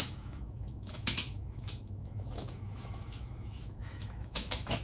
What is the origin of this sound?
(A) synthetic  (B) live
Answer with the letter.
A